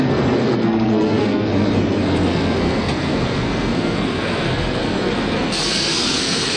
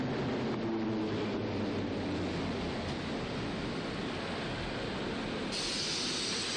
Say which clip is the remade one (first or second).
first